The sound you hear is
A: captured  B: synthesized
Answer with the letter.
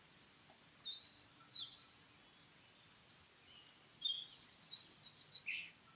A